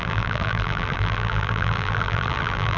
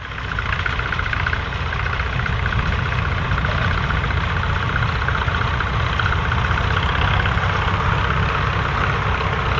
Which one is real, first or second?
second